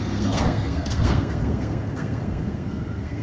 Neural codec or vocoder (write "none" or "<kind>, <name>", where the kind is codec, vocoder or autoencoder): codec, SNAC